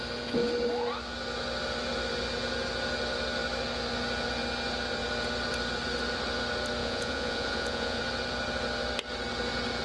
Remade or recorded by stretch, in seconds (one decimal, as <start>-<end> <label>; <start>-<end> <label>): 0.0-6.8 recorded; 6.8-8.0 remade; 8.0-9.8 recorded